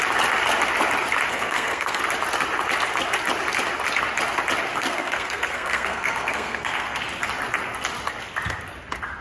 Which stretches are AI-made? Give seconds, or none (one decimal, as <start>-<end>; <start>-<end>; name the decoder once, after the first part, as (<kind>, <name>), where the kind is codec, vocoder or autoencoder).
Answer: 1.3-2.0 (codec, SNAC); 4.7-7.0